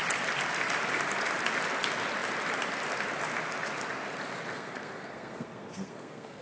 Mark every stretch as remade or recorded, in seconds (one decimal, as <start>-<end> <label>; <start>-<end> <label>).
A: 0.0-4.5 recorded; 4.5-6.4 remade